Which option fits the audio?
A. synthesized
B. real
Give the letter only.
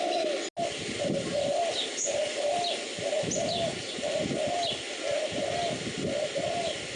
B